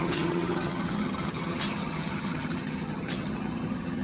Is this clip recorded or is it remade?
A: remade